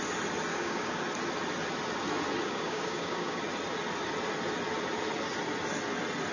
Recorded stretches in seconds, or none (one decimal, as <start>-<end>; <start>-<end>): 0.0-0.5; 1.0-2.4; 3.4-6.3